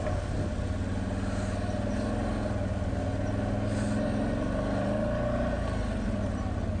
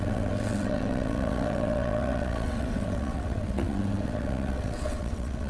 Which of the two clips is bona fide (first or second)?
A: first